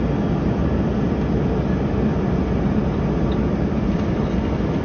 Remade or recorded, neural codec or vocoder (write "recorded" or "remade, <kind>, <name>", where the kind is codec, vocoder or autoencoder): recorded